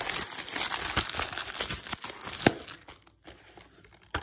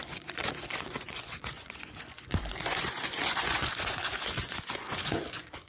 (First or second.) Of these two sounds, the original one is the first